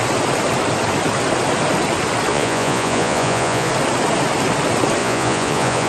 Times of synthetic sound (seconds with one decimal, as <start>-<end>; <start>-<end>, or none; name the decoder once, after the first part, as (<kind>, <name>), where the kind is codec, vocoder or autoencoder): 2.3-3.7 (vocoder, Vocos); 5.0-5.9